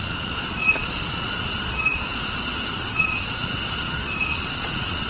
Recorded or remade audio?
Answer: remade